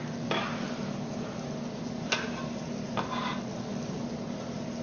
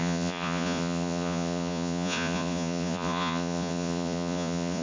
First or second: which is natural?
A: first